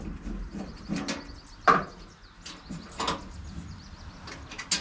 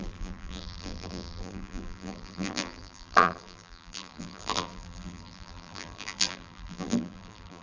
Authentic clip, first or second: first